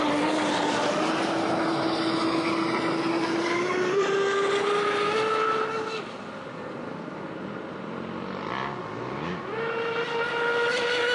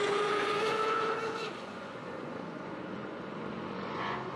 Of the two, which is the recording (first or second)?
first